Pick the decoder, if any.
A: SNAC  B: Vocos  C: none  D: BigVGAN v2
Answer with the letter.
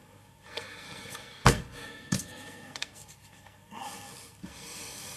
A